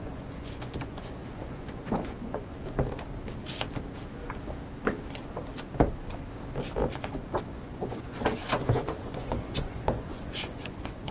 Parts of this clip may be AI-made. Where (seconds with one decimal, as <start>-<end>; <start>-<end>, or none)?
0.0-2.5; 7.5-11.1